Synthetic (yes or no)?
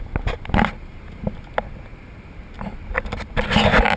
no